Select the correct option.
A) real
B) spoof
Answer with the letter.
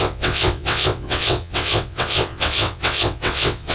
B